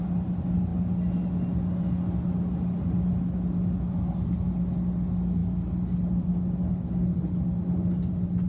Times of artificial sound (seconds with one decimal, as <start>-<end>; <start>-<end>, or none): none